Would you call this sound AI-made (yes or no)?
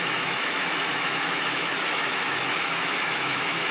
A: yes